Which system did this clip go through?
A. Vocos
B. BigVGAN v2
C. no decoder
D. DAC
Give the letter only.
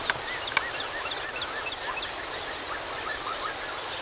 C